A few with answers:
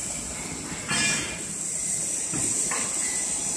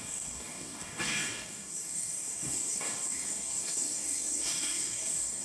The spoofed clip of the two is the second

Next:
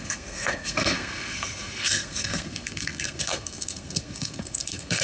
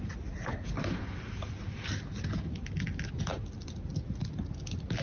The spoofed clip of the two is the first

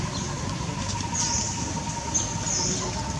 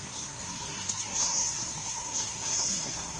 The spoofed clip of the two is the second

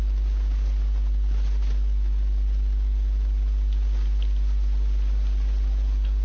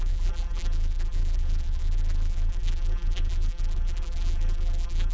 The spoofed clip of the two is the second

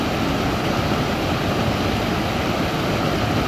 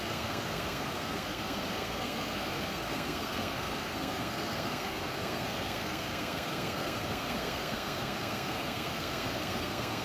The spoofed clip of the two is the second